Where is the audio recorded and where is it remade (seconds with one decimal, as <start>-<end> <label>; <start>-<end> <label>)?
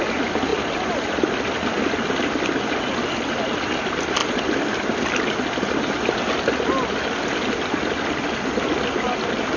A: 0.0-9.6 recorded